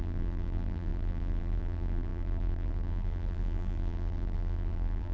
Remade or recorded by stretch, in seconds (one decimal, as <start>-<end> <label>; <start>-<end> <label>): 0.0-5.1 remade